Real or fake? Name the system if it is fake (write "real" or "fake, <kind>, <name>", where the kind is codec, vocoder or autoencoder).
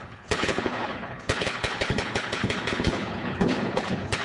fake, codec, HILCodec